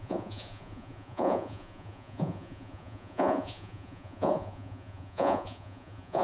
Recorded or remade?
remade